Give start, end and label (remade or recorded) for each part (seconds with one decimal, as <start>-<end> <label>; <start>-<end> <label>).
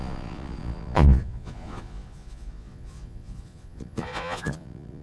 0.0-5.0 remade